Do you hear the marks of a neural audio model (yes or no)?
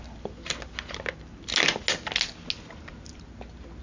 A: no